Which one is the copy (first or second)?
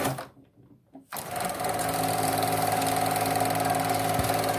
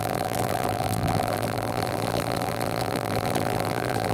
second